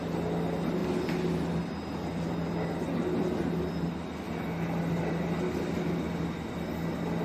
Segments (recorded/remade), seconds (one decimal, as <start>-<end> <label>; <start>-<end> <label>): 0.0-7.2 recorded